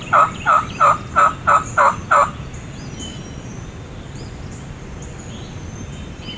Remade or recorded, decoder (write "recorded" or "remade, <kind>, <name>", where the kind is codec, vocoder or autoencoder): recorded